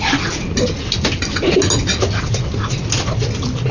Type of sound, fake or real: real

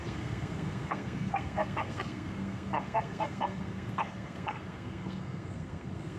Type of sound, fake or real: fake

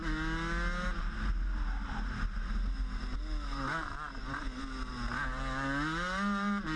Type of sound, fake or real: real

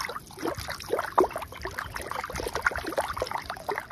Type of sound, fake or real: real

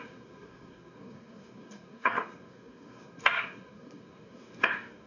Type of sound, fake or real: fake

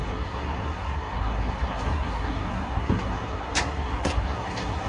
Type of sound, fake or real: fake